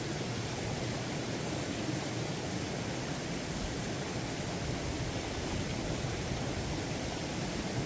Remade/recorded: recorded